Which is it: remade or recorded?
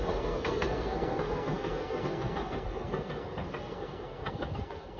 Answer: remade